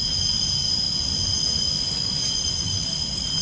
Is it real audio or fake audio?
real